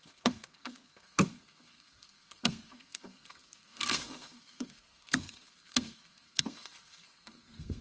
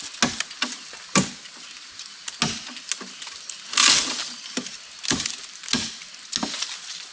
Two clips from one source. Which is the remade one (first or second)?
first